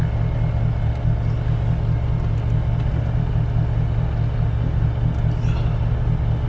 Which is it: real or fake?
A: real